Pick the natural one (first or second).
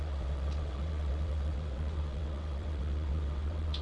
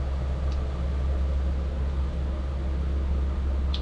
second